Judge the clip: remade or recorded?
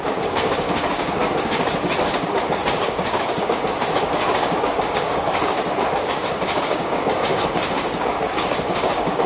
remade